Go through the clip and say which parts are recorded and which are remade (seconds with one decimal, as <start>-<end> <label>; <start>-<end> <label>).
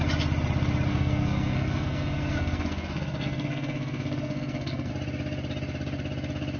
0.0-0.9 recorded; 0.9-4.9 remade; 4.9-6.6 recorded